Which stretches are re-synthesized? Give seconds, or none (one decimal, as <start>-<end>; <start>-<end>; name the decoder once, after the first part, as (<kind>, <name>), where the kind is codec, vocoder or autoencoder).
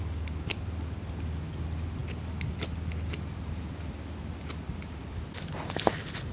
none